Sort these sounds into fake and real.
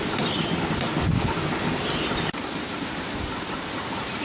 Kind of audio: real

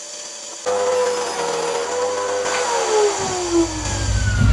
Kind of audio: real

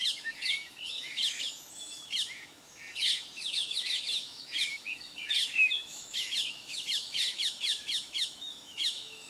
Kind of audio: fake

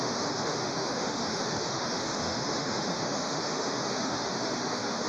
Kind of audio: fake